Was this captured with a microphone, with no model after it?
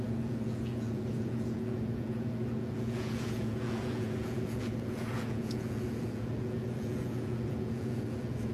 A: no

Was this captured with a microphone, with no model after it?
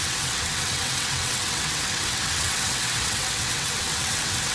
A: no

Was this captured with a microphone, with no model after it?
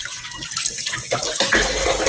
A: yes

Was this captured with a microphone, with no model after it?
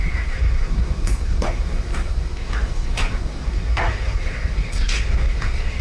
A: no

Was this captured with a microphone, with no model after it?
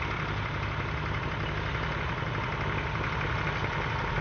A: yes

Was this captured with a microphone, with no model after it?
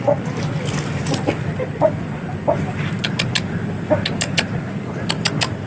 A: yes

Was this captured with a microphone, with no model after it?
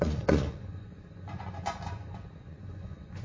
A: no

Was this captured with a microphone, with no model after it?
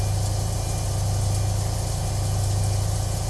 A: yes